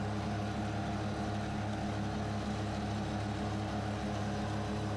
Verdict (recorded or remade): recorded